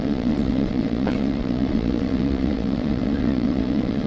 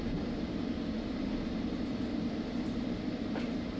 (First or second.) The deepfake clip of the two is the first